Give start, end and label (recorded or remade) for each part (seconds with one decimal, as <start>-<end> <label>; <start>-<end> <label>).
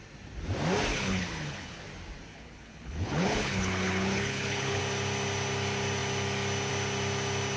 0.0-0.9 recorded; 0.9-1.8 remade; 1.8-2.3 recorded; 2.3-4.8 remade; 4.8-7.6 recorded